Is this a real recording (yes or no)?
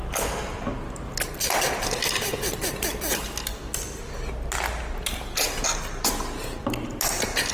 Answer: yes